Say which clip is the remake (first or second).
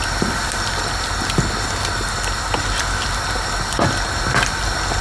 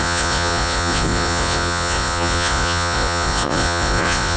second